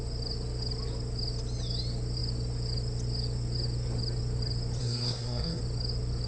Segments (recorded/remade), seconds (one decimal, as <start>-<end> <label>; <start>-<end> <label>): 0.0-4.8 recorded; 4.8-5.6 remade; 5.6-6.3 recorded